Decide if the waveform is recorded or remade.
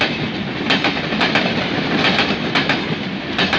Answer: remade